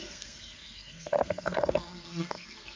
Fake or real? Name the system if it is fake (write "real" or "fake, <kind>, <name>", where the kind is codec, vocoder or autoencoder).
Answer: fake, codec, SNAC